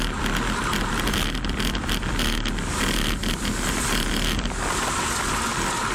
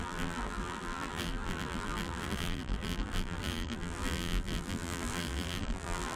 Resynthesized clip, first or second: second